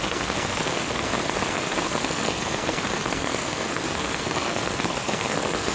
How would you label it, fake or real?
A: fake